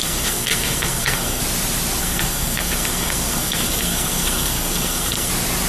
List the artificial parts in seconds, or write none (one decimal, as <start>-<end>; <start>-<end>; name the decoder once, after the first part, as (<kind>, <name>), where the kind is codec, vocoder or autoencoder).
0.0-1.4 (codec, SNAC); 2.0-5.3